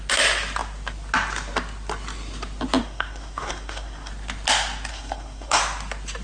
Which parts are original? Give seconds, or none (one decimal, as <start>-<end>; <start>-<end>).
0.0-2.8; 4.1-4.9; 5.6-6.2